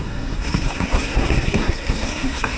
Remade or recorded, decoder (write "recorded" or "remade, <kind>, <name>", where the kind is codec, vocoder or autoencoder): remade, codec, SNAC